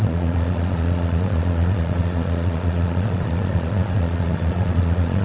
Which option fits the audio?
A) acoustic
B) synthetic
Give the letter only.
B